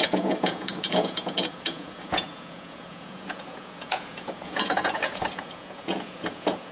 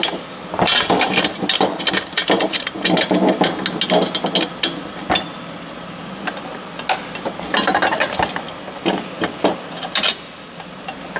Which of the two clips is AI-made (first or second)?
first